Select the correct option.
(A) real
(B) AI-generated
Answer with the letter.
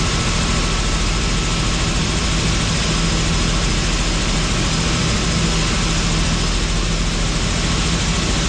A